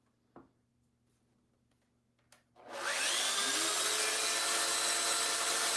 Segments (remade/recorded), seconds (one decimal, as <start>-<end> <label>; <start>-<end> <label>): 0.0-5.8 recorded